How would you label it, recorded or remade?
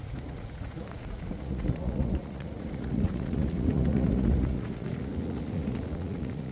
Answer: remade